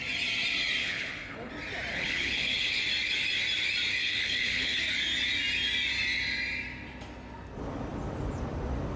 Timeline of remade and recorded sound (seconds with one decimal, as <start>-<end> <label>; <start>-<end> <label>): 0.0-0.8 recorded; 0.8-1.5 remade; 1.5-1.9 recorded; 1.9-2.8 remade; 2.8-4.0 recorded; 4.0-4.8 remade; 4.8-9.0 recorded